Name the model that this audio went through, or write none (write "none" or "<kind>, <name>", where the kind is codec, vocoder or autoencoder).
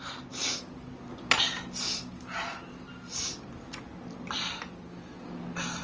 none